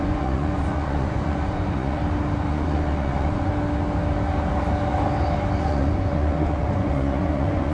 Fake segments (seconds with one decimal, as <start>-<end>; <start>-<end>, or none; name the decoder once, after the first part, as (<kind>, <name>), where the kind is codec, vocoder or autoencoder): 0.0-2.0 (vocoder, Vocos); 2.5-3.5; 5.6-7.7